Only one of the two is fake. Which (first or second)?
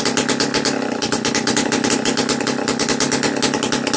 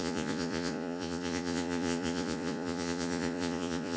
second